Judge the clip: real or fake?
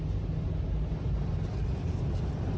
real